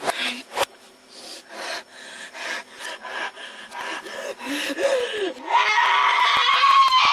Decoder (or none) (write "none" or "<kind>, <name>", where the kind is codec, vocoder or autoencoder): none